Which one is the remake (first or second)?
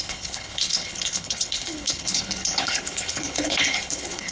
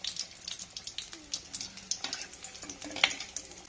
first